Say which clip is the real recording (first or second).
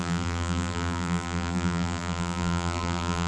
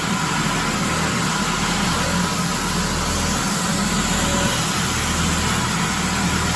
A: second